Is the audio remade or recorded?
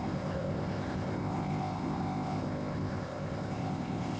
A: remade